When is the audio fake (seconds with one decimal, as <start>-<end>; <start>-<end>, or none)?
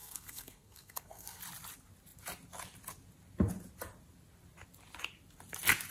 0.0-1.4